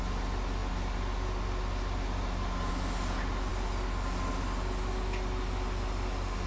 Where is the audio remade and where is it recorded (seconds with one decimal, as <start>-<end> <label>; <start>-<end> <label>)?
0.0-6.5 recorded